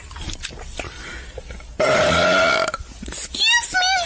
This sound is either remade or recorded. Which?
recorded